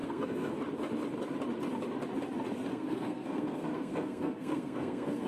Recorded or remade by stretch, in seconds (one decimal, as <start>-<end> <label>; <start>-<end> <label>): 0.0-0.5 remade; 0.5-2.7 recorded; 2.7-5.3 remade